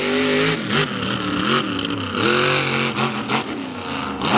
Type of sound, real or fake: real